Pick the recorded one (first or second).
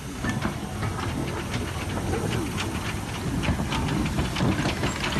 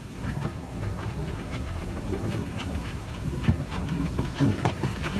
first